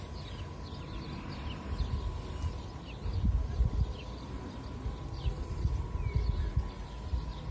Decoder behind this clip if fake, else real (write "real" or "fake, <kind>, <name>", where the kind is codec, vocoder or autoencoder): real